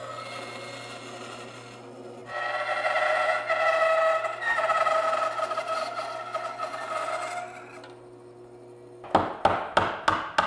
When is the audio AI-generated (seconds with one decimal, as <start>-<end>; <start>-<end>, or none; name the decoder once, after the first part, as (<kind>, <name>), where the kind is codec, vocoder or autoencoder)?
none